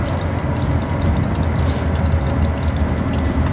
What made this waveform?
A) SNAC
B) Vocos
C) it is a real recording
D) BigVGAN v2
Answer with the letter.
C